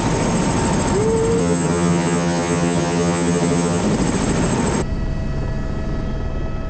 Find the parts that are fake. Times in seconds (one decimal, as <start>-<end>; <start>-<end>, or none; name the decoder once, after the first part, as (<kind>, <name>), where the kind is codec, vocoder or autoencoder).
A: 1.4-3.8 (vocoder, HiFi-GAN)